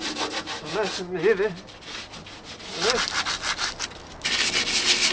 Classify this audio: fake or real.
real